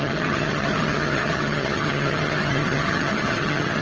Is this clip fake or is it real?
fake